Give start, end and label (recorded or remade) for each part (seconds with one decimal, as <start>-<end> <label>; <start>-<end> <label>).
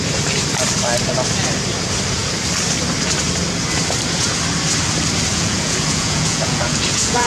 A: 0.0-5.3 recorded; 5.3-7.3 remade